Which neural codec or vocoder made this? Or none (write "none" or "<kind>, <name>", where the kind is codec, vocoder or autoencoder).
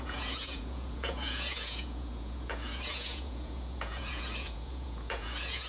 vocoder, Vocos